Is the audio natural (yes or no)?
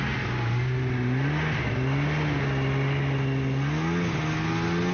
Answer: yes